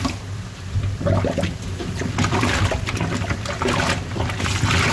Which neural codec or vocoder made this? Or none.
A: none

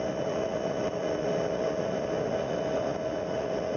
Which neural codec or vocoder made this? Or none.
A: vocoder, Vocos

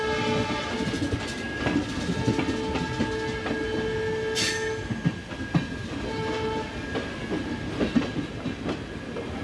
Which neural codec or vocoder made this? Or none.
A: none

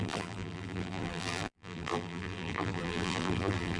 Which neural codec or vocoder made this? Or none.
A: vocoder, BigVGAN v2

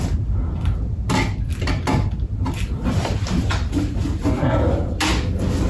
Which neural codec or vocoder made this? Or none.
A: none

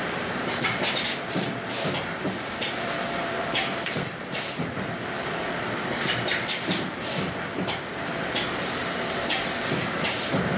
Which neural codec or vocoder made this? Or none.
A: vocoder, BigVGAN v2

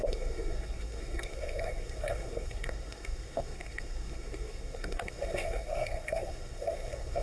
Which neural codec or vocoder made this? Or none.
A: codec, SNAC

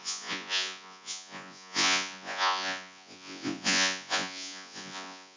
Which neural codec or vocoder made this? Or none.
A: vocoder, Vocos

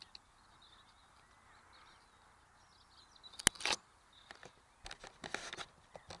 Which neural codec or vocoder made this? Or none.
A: none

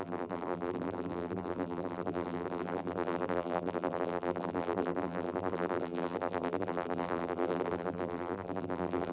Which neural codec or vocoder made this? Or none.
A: vocoder, BigVGAN v2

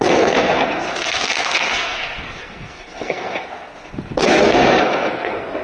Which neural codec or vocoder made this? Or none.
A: codec, SNAC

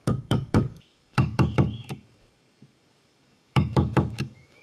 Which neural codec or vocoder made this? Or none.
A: codec, DAC